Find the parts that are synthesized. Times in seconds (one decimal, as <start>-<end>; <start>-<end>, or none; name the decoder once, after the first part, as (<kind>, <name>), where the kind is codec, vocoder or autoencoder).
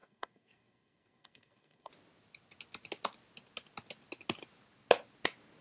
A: 0.0-1.9 (codec, SNAC)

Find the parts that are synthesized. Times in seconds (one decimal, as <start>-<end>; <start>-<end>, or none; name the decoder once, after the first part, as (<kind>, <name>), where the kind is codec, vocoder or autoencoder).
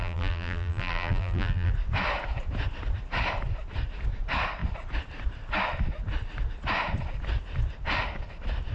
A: 0.0-1.7 (vocoder, BigVGAN v2)